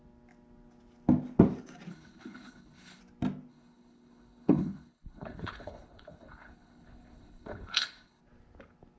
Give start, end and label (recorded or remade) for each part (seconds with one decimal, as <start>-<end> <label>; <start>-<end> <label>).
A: 0.0-1.9 recorded; 1.9-3.0 remade; 3.0-3.5 recorded; 3.5-8.2 remade; 8.2-9.0 recorded